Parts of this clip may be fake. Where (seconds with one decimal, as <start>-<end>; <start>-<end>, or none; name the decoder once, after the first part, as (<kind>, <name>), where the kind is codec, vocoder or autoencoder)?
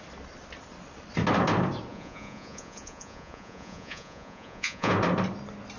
1.9-4.9 (vocoder, Vocos)